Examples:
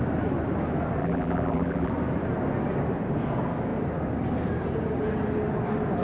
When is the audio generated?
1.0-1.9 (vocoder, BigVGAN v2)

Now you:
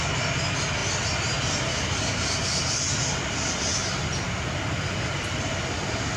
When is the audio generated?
none

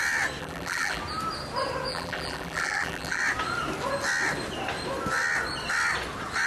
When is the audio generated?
0.4-1.0 (vocoder, BigVGAN v2); 1.9-3.2

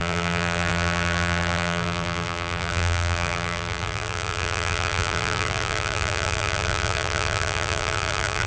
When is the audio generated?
0.0-8.5 (vocoder, BigVGAN v2)

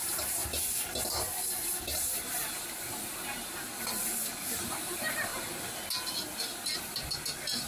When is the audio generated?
0.0-0.4 (vocoder, BigVGAN v2); 4.5-5.3

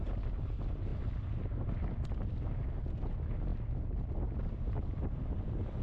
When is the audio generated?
none